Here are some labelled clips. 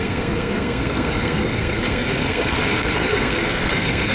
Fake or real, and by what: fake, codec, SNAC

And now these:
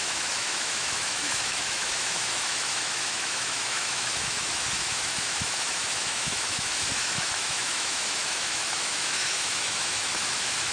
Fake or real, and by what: fake, autoencoder, DAC-VAE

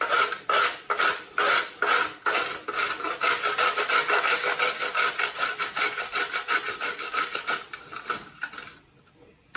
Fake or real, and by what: real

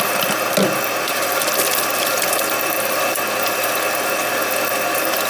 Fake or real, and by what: real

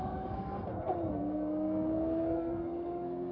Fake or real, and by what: fake, codec, SNAC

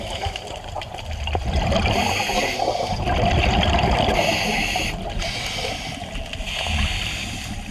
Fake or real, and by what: real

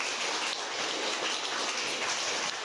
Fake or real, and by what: real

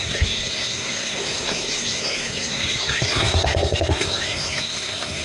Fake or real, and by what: fake, codec, SNAC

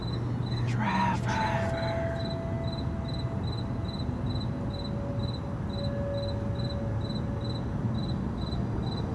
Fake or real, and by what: real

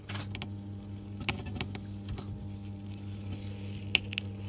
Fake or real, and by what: real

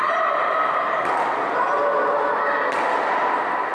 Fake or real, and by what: real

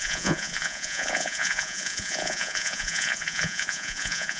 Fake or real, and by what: fake, vocoder, Vocos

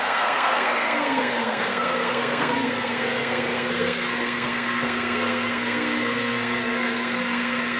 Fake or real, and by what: fake, codec, SNAC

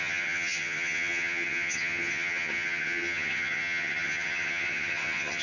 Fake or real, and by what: fake, vocoder, HiFi-GAN